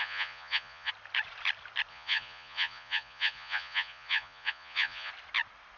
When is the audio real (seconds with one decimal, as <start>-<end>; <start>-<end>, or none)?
0.9-1.9; 5.1-5.8